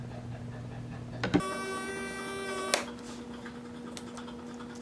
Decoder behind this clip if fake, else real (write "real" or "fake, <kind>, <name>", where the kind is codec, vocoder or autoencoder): real